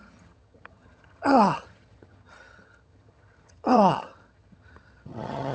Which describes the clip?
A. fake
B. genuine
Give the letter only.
A